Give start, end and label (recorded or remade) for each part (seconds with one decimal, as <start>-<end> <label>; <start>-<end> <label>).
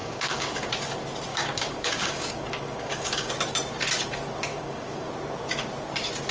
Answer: 0.0-0.7 remade; 0.7-1.3 recorded; 1.3-3.3 remade; 3.3-4.5 recorded; 4.5-5.1 remade; 5.1-6.3 recorded